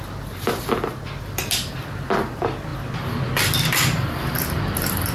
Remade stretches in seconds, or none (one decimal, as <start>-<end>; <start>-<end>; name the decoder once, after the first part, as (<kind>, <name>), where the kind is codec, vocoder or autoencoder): none